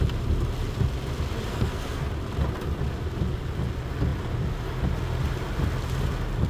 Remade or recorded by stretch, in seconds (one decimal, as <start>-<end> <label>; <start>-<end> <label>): 0.0-1.5 recorded; 1.5-2.1 remade; 2.1-6.5 recorded